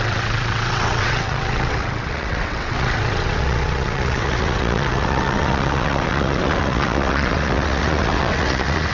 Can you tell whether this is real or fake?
fake